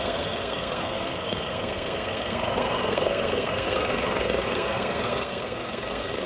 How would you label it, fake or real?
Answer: fake